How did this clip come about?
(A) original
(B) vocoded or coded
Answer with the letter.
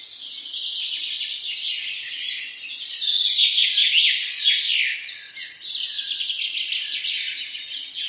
A